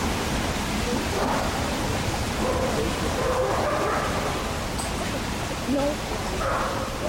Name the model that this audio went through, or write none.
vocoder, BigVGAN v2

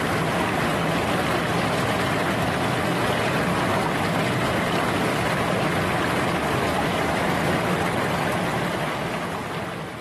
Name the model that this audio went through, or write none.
none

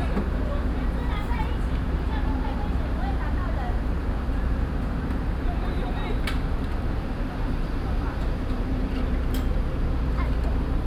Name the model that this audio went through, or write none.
vocoder, BigVGAN v2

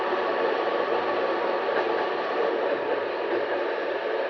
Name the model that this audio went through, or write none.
vocoder, BigVGAN v2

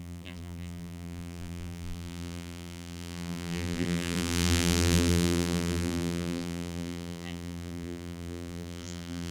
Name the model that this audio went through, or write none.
vocoder, BigVGAN v2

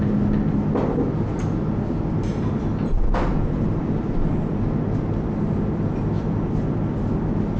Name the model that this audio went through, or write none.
none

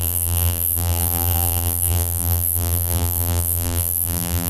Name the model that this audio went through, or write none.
vocoder, BigVGAN v2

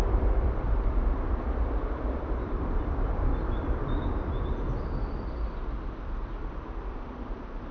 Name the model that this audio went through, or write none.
vocoder, BigVGAN v2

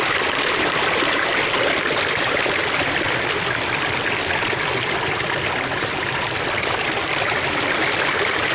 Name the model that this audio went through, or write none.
vocoder, BigVGAN v2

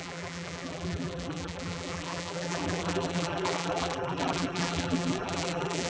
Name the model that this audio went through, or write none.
vocoder, BigVGAN v2